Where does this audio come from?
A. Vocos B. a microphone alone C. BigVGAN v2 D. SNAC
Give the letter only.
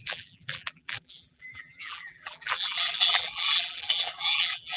C